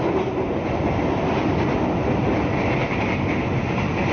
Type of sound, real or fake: real